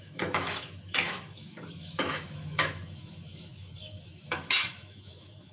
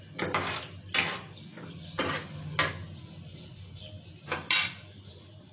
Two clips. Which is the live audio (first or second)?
second